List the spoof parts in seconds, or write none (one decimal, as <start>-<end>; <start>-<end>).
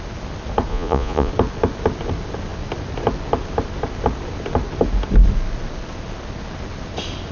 0.7-1.3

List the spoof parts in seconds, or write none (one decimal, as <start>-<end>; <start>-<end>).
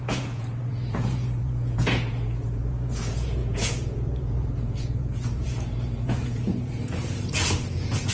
0.0-8.1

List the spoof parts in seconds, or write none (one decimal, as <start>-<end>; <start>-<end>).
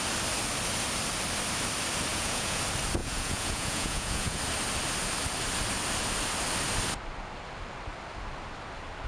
2.1-2.6; 3.0-4.4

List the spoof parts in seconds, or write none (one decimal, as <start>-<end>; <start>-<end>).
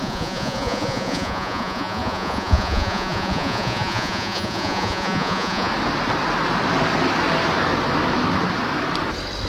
0.0-5.7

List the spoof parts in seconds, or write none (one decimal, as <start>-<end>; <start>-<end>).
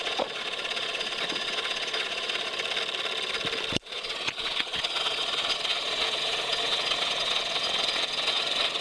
0.0-2.5; 3.7-8.8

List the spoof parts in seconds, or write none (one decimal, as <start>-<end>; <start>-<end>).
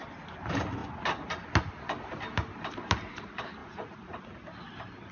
3.6-4.2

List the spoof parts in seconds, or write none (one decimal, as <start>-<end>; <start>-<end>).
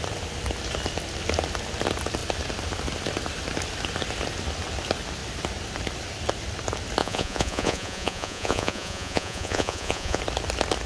7.0-10.2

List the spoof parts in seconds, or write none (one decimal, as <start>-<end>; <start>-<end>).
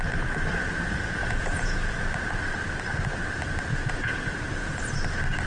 1.2-2.1; 3.7-4.8